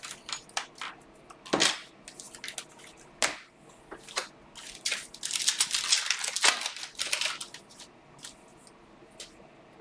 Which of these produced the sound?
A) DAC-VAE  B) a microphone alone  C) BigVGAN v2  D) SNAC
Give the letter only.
B